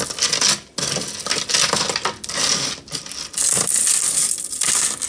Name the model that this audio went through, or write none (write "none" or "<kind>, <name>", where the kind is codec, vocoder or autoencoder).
none